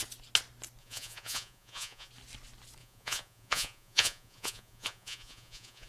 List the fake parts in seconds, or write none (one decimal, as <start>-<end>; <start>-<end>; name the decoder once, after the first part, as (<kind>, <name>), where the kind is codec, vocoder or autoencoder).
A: 0.8-2.1 (vocoder, Vocos); 2.8-5.9